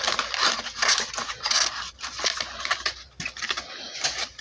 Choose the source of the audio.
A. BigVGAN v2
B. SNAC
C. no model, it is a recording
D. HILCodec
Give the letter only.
C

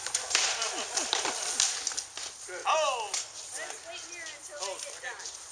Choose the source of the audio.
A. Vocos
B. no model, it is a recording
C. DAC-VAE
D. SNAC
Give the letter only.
B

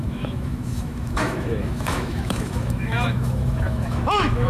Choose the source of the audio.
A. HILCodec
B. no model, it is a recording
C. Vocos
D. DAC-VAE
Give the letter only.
D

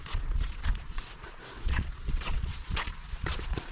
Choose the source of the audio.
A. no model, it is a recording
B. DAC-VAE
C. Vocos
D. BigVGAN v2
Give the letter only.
C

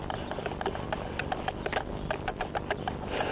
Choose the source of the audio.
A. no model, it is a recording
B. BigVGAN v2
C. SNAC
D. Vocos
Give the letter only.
A